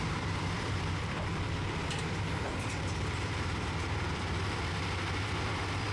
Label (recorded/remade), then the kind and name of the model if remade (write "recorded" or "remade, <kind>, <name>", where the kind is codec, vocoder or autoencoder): remade, vocoder, BigVGAN v2